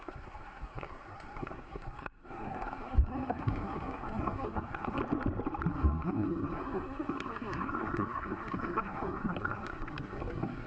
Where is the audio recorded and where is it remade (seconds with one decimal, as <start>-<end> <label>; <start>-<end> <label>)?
0.0-5.0 remade; 5.0-5.7 recorded; 5.7-10.7 remade